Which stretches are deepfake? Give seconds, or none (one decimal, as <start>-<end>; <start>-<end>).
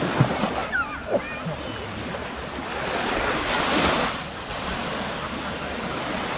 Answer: 0.6-1.2